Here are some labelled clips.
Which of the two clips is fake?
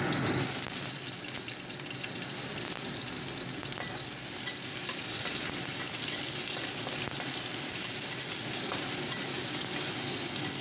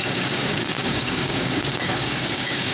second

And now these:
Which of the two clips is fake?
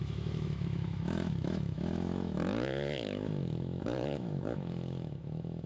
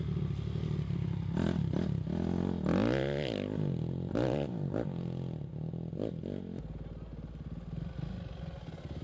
first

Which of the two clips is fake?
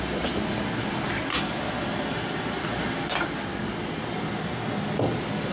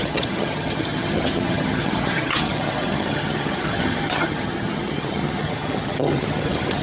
second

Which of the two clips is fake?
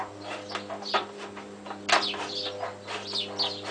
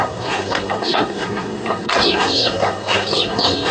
second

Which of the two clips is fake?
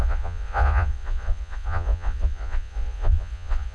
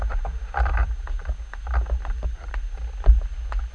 first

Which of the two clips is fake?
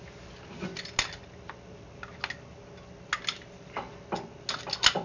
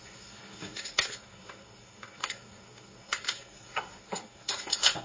second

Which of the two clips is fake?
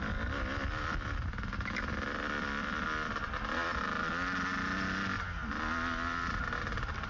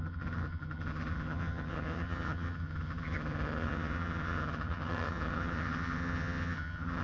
second